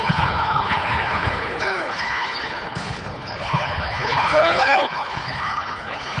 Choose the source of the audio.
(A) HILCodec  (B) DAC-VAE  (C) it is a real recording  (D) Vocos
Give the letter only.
A